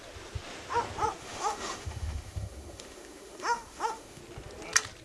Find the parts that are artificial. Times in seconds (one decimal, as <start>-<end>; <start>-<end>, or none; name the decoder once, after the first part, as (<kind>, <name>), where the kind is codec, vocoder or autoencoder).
1.2-4.2 (autoencoder, DAC-VAE)